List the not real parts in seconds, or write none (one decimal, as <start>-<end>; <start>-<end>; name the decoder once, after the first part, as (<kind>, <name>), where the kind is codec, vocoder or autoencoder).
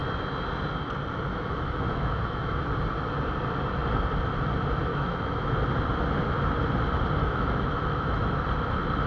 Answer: 1.3-2.6 (autoencoder, DAC-VAE); 4.9-5.6; 7.2-8.4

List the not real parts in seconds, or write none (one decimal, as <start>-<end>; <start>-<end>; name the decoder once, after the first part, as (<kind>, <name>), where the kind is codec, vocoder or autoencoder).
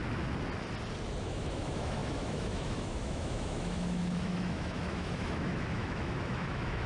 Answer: 1.2-6.9 (autoencoder, DAC-VAE)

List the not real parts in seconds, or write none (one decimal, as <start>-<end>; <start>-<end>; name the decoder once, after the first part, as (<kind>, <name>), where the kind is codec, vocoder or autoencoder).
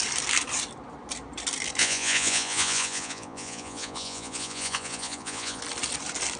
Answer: 1.8-5.6 (vocoder, Vocos)